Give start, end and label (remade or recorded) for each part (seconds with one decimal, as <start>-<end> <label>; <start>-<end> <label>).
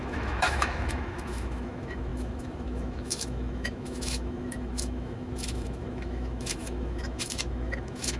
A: 0.0-8.2 remade